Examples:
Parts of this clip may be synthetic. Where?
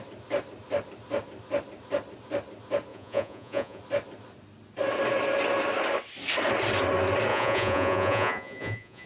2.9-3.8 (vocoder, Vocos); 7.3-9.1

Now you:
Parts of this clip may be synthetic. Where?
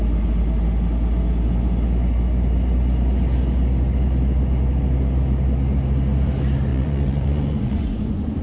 6.7-8.4 (vocoder, Vocos)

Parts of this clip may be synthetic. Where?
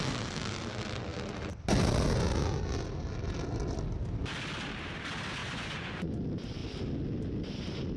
5.4-6.1 (vocoder, Vocos)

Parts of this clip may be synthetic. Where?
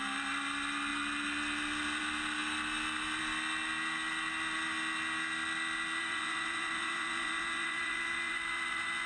6.0-9.1 (vocoder, Vocos)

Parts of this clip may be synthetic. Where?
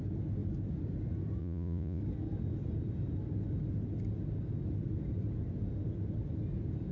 1.4-2.0 (vocoder, Vocos)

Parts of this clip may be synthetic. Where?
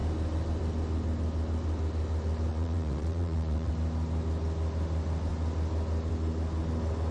2.5-3.7 (vocoder, Vocos)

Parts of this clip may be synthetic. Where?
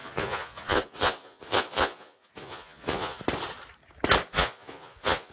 0.0-3.2 (vocoder, Vocos); 4.3-5.3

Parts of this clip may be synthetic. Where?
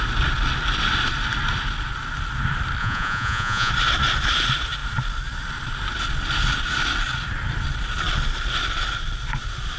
2.8-3.7 (vocoder, Vocos)